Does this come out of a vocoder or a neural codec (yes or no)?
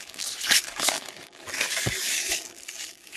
yes